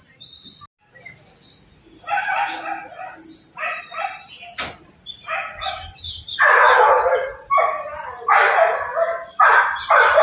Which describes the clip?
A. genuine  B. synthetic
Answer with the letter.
A